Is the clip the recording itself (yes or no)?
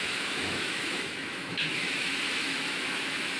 no